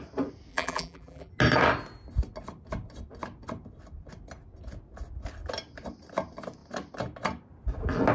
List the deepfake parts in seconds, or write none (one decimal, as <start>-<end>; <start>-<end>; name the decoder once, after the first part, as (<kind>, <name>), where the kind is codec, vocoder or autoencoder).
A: 0.5-1.3 (vocoder, BigVGAN v2)